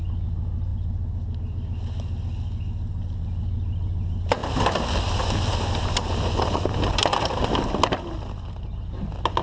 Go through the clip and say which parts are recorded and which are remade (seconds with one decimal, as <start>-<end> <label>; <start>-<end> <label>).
0.0-9.4 recorded